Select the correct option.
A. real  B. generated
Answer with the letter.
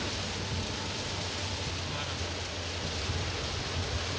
A